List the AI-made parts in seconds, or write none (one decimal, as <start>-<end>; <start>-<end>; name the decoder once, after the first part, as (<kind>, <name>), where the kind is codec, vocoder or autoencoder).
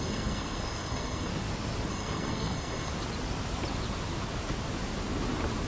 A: 0.0-1.3 (codec, SNAC); 1.9-2.9